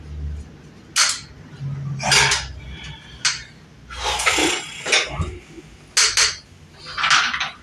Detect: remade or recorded recorded